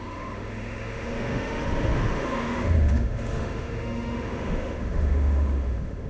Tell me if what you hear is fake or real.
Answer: fake